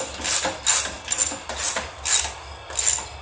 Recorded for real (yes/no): yes